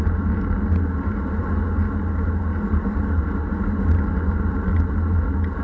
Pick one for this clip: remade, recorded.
recorded